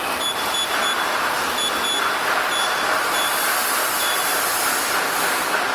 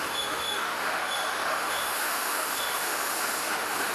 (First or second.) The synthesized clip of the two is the second